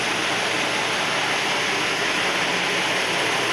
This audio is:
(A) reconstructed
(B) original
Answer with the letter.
B